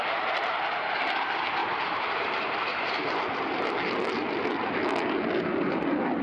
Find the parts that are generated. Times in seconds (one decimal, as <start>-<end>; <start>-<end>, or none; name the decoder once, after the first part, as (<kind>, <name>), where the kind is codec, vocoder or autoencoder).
1.6-3.0 (vocoder, BigVGAN v2)